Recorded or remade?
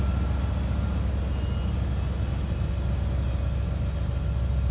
recorded